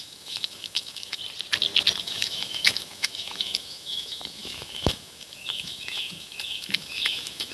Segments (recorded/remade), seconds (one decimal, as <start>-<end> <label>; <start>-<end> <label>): 0.0-1.2 remade; 1.2-2.0 recorded; 2.0-7.5 remade